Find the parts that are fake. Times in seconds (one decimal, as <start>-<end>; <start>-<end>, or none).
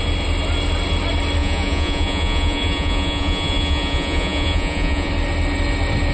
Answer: 1.4-5.1